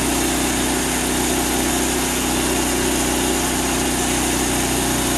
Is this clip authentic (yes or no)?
yes